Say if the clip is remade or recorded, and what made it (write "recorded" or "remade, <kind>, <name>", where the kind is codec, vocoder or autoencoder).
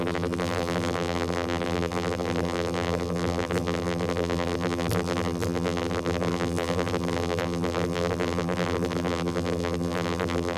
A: remade, vocoder, BigVGAN v2